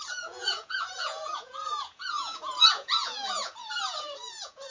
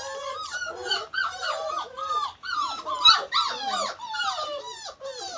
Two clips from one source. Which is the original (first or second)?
second